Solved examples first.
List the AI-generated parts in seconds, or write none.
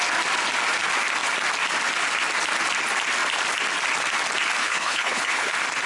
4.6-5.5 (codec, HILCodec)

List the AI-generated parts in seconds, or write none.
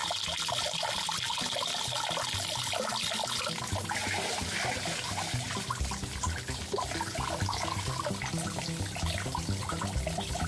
none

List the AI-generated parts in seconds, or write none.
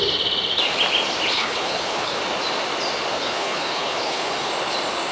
1.3-2.2 (codec, HILCodec); 3.1-4.5